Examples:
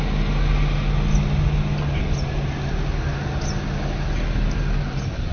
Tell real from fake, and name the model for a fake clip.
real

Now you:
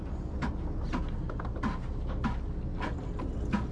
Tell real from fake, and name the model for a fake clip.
real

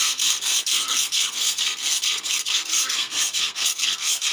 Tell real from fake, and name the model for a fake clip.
fake, codec, SNAC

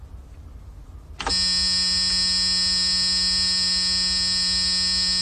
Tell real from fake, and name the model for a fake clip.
real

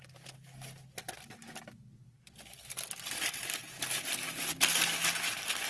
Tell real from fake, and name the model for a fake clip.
real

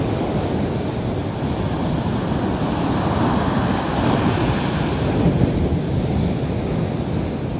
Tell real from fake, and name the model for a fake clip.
real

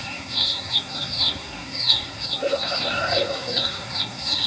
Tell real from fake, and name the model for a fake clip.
fake, codec, SNAC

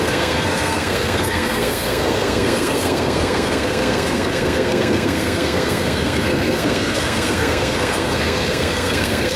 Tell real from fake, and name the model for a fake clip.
fake, codec, SNAC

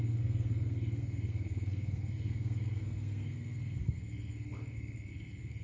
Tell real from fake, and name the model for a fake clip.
fake, codec, SNAC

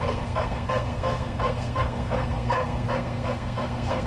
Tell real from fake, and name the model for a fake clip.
fake, codec, SNAC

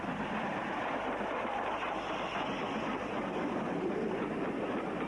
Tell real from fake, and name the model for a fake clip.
real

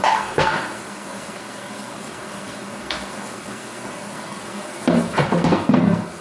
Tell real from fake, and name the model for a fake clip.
fake, codec, SNAC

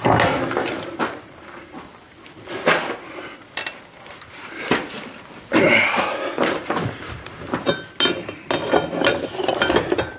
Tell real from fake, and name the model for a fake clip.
real